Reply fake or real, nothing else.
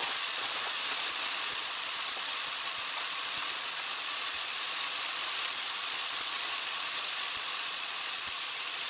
fake